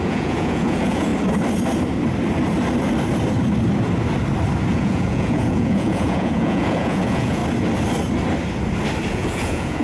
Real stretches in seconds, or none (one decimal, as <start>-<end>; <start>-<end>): 1.1-4.7; 7.4-9.1